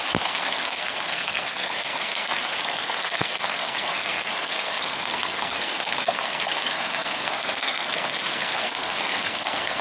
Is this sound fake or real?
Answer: fake